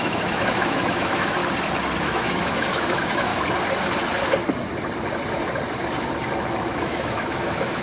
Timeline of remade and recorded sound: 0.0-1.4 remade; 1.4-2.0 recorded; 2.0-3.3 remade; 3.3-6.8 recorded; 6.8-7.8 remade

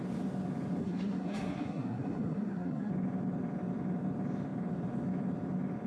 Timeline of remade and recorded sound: 0.0-0.8 recorded; 0.8-2.9 remade; 2.9-5.9 recorded

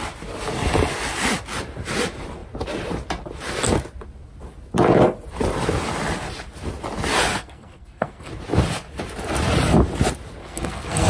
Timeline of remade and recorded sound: 0.0-7.4 recorded; 7.4-8.3 remade; 8.3-10.4 recorded; 10.4-11.1 remade

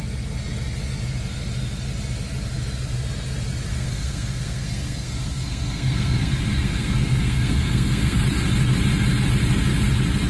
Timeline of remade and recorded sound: 0.0-3.7 recorded; 3.7-8.2 remade; 8.2-10.3 recorded

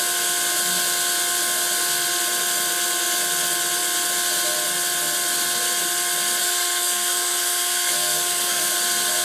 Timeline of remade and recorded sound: 0.0-6.4 recorded; 6.4-8.7 remade; 8.7-9.2 recorded

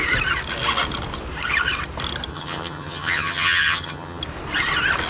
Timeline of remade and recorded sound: 0.0-2.3 recorded; 2.3-4.2 remade; 4.2-5.1 recorded

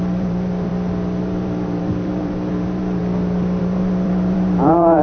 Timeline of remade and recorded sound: 0.0-0.7 remade; 0.7-1.2 recorded; 1.2-3.0 remade; 3.0-3.6 recorded; 3.6-5.0 remade

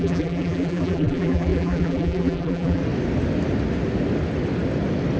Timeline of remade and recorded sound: 0.0-2.8 remade; 2.8-5.2 recorded